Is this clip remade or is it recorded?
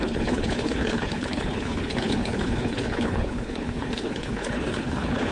remade